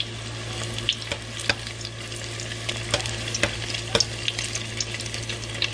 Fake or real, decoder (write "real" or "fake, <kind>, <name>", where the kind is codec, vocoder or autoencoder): real